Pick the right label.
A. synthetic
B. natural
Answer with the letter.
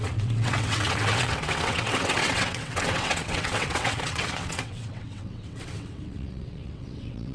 A